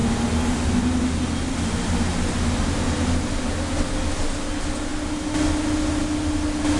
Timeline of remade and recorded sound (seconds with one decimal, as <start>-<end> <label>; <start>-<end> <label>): 0.0-6.8 recorded